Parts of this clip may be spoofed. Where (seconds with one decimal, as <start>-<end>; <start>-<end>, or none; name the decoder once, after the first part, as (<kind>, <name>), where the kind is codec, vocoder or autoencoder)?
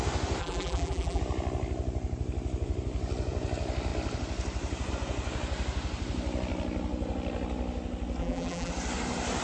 0.4-1.2 (vocoder, BigVGAN v2); 8.2-8.7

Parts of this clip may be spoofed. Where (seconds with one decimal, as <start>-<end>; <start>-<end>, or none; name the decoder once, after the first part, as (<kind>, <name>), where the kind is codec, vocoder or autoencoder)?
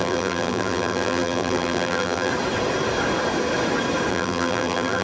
0.0-2.3 (vocoder, BigVGAN v2); 4.1-5.0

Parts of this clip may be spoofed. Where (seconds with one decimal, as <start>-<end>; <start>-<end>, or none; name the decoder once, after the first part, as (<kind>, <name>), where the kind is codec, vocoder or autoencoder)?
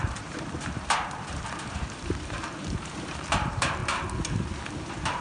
0.0-3.8 (vocoder, BigVGAN v2); 4.8-5.2